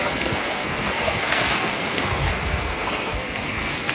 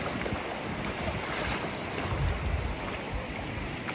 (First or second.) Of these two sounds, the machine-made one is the first